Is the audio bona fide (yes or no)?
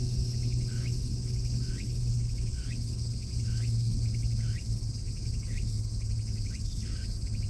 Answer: no